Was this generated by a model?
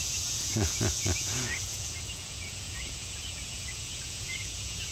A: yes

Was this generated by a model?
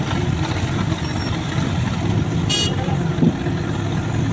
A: no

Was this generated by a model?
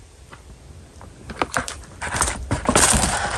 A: yes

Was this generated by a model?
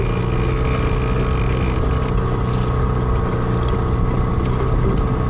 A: no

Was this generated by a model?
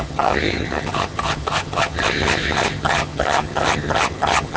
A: yes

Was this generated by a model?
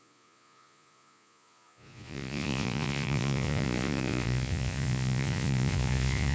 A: yes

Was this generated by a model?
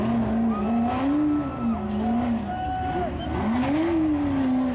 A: no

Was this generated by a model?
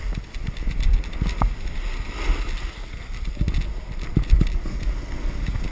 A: no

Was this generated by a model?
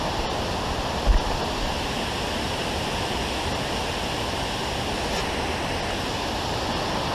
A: no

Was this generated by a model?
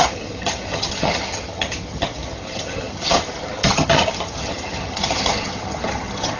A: yes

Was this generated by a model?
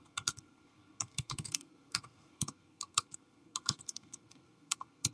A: yes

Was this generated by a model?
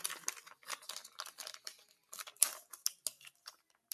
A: no